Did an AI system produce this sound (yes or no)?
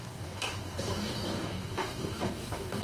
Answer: yes